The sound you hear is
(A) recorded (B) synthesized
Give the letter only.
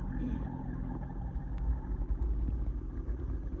B